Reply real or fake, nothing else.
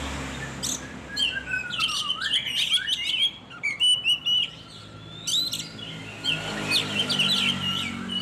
real